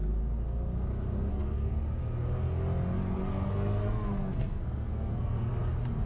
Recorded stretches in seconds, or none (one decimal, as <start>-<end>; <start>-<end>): 0.0-1.3; 2.0-3.0; 5.5-6.1